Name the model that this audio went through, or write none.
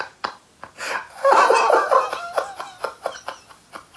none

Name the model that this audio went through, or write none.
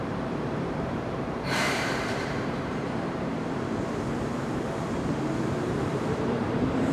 vocoder, BigVGAN v2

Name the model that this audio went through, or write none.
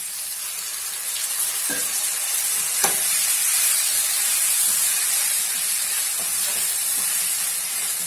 none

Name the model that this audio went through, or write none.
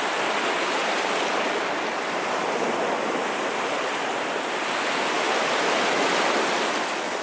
none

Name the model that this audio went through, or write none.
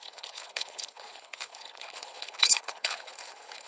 codec, HILCodec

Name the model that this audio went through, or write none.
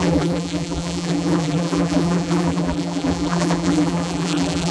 vocoder, BigVGAN v2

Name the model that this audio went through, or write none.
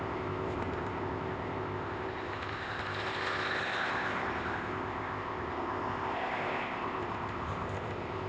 codec, ZipCodec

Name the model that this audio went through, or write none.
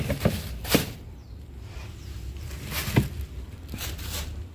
none